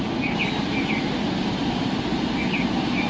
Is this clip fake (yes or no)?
no